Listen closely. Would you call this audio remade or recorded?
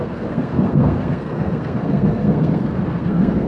remade